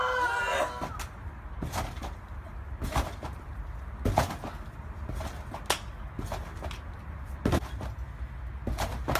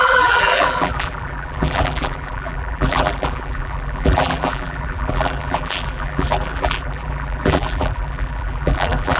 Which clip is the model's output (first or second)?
second